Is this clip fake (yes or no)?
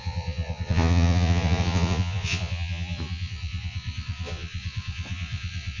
yes